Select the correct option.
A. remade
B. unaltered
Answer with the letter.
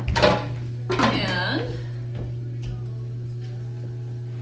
B